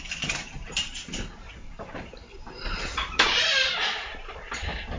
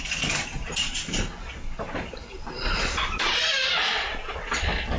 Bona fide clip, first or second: second